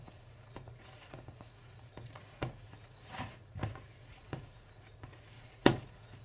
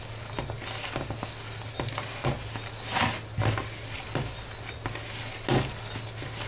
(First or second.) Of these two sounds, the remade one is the first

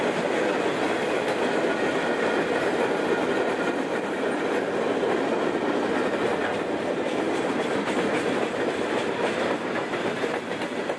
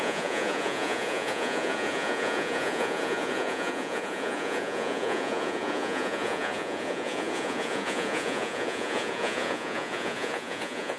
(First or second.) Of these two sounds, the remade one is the second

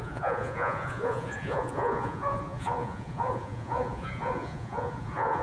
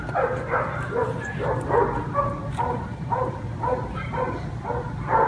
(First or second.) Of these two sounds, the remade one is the first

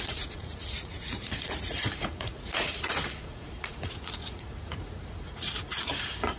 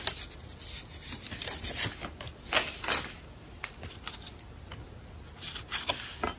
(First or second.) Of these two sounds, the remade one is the first